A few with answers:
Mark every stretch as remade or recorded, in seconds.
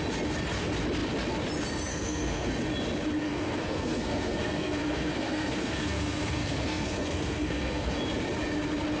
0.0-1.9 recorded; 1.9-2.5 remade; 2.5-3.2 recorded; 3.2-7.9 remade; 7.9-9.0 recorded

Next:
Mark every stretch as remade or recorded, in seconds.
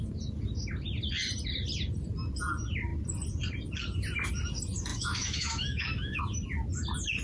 0.0-4.9 recorded; 4.9-6.2 remade; 6.2-7.2 recorded